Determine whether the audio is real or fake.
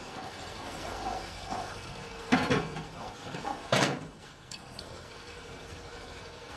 fake